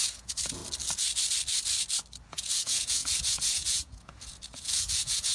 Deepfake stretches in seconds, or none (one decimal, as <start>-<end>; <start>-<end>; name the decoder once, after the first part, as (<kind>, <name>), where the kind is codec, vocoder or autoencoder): 0.0-0.6 (vocoder, Vocos); 2.3-5.3